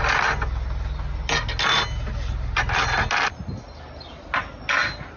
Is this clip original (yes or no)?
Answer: yes